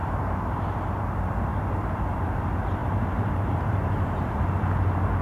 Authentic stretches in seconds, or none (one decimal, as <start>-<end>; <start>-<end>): 1.1-1.5; 2.4-2.8; 4.4-5.2